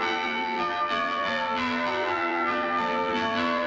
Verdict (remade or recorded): remade